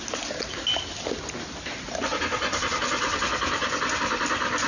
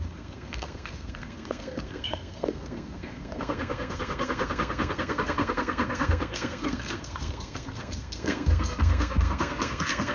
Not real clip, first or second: second